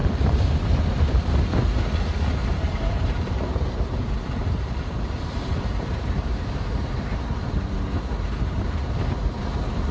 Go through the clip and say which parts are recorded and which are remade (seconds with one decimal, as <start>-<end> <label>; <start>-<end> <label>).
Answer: 0.0-2.4 recorded; 2.4-7.3 remade; 7.3-9.9 recorded